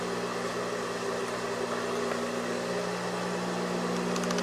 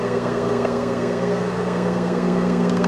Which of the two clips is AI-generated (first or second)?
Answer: second